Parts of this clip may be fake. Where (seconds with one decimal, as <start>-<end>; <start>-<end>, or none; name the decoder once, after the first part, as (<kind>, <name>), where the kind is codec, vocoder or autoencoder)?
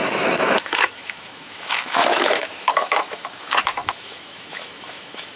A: 0.0-5.4 (autoencoder, DAC-VAE)